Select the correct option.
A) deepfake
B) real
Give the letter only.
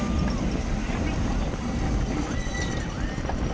B